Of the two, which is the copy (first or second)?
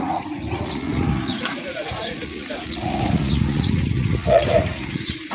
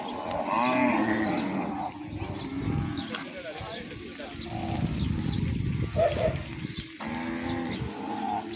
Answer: first